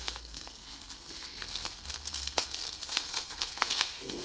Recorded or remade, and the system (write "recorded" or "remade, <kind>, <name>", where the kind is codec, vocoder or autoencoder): remade, codec, SNAC